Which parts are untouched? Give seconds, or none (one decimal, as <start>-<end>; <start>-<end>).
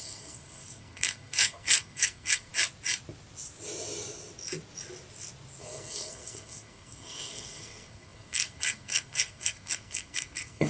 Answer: 2.5-5.6